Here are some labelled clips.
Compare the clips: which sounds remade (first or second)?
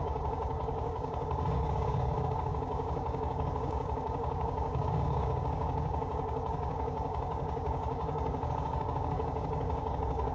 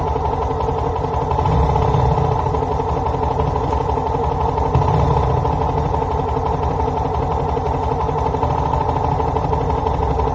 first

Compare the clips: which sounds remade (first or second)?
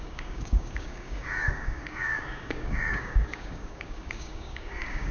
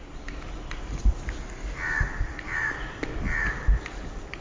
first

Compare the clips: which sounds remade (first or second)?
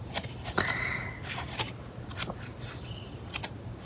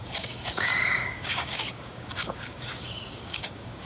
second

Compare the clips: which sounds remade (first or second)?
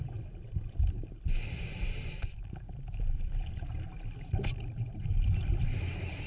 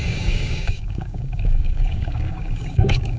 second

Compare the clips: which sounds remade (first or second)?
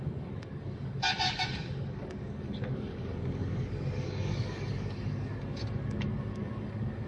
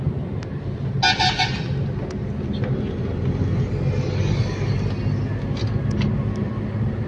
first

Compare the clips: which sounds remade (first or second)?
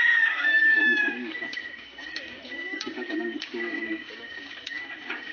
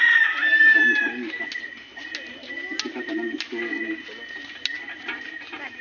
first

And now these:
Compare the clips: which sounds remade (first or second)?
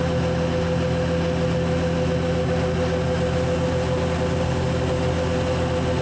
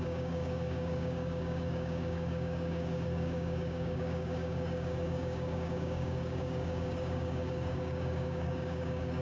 second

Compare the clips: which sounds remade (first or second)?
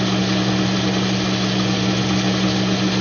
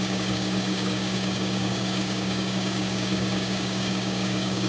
second